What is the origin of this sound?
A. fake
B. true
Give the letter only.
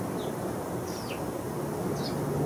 B